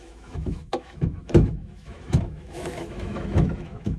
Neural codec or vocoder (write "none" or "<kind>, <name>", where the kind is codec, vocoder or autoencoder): autoencoder, DAC-VAE